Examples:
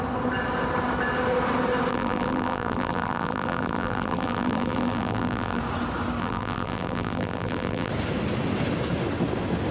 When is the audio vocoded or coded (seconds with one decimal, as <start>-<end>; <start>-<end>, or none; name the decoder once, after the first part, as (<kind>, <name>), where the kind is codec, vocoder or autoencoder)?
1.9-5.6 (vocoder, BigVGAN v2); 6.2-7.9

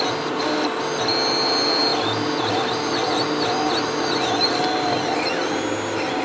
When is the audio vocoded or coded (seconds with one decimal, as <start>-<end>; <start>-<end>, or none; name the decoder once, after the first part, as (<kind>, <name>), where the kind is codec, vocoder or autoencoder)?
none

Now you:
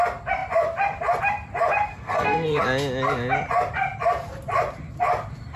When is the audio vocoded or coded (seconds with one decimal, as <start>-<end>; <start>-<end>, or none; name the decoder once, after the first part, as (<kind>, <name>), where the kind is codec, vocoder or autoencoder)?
1.9-2.6 (codec, SNAC)